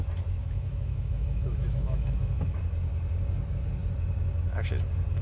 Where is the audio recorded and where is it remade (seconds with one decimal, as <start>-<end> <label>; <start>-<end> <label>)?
0.0-0.4 recorded; 0.4-2.6 remade; 2.6-5.2 recorded